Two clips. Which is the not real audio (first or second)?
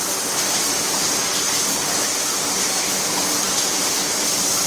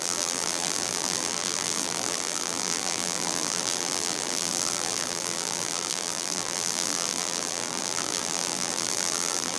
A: second